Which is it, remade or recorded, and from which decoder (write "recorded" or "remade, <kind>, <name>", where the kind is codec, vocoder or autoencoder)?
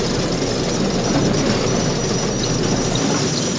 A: recorded